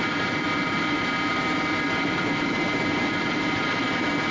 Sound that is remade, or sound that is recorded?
remade